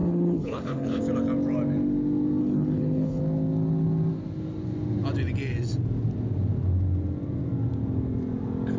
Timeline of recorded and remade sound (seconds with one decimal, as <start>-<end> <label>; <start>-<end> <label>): 0.0-1.0 remade; 1.0-2.4 recorded; 2.4-3.2 remade; 3.2-8.8 recorded